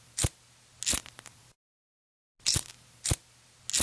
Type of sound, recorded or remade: recorded